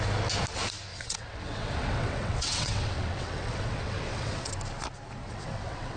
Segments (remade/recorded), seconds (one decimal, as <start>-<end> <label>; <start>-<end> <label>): 0.0-0.9 recorded; 0.9-4.5 remade; 4.5-5.2 recorded; 5.2-6.0 remade